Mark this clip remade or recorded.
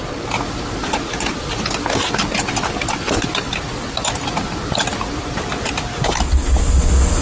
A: recorded